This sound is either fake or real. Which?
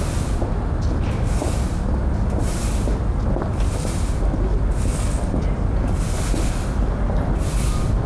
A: real